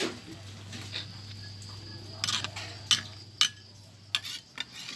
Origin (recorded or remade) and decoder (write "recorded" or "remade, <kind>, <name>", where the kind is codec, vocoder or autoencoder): recorded